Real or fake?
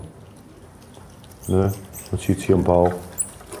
fake